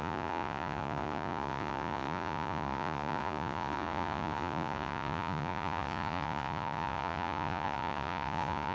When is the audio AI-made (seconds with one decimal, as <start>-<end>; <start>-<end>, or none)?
0.0-8.7